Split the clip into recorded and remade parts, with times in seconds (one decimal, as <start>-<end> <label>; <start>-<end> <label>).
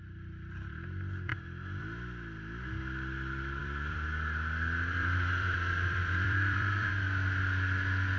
0.0-3.6 recorded; 3.6-6.9 remade; 6.9-8.2 recorded